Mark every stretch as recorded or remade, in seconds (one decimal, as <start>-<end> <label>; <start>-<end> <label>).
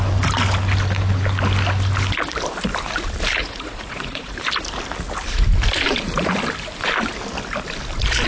0.0-3.4 recorded; 3.4-4.3 remade; 4.3-8.3 recorded